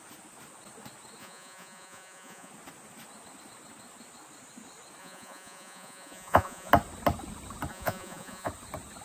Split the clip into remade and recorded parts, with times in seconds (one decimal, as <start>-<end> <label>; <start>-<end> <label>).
0.0-1.2 recorded; 1.2-2.5 remade; 2.5-5.0 recorded; 5.0-6.7 remade; 6.7-7.7 recorded; 7.7-8.5 remade; 8.5-9.0 recorded